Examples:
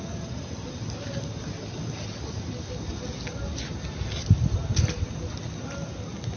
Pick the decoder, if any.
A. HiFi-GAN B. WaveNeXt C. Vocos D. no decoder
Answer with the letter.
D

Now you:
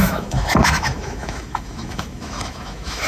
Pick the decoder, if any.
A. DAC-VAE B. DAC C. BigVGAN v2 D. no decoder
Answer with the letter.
A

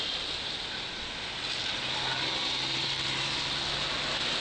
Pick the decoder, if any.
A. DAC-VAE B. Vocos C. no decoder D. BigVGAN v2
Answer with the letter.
C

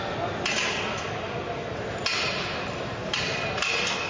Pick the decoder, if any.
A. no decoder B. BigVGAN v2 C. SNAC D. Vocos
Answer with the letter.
A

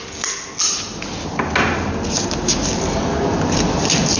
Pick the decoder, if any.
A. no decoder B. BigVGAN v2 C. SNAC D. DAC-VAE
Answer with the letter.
A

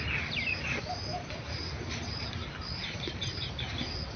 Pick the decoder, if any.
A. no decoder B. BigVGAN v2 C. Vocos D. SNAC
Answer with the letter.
B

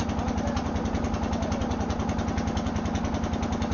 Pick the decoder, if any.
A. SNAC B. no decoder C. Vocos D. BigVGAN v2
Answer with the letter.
B